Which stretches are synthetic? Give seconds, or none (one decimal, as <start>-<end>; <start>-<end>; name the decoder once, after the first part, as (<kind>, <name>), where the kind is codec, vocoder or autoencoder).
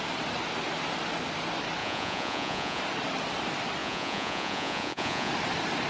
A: 1.8-2.8 (vocoder, Vocos); 3.8-5.3